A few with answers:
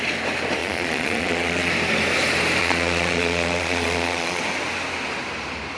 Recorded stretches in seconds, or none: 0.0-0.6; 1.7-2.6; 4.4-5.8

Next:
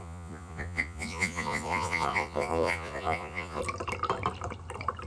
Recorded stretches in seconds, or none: 3.6-5.1

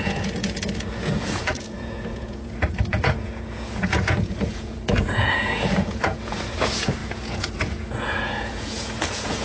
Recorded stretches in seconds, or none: none

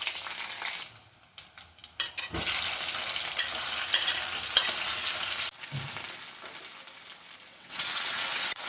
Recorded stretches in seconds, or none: 0.0-7.5

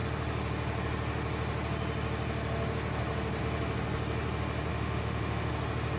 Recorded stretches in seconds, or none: 0.0-4.7; 5.5-6.0

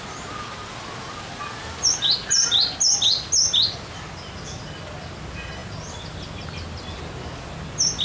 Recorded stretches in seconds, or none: 0.0-8.0